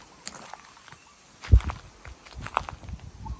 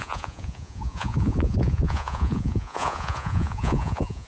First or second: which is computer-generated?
second